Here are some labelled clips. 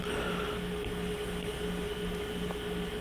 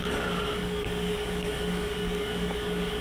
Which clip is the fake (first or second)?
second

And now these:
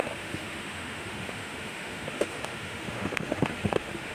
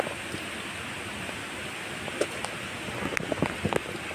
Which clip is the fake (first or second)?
first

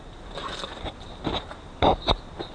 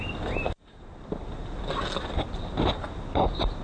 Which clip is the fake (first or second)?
first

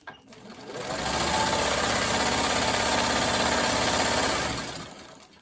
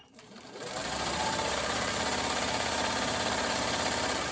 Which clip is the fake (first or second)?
second